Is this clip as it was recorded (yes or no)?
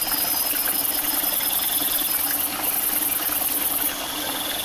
yes